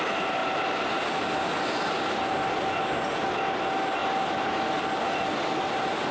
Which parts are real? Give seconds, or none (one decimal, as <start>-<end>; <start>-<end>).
0.0-6.1